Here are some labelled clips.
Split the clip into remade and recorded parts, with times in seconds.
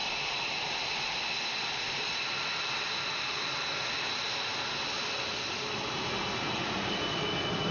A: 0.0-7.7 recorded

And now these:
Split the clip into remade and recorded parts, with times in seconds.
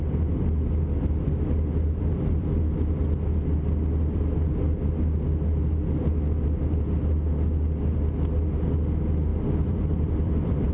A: 0.0-2.1 recorded; 2.1-2.6 remade; 2.6-9.3 recorded; 9.3-10.7 remade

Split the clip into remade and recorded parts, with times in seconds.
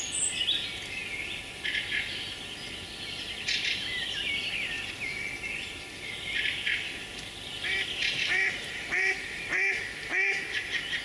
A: 0.0-8.0 recorded; 8.0-9.4 remade; 9.4-11.0 recorded